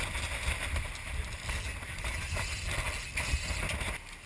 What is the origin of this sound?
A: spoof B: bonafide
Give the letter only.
B